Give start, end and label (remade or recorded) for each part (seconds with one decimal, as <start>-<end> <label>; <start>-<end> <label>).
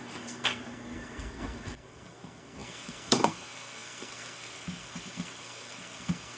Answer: 0.0-6.4 remade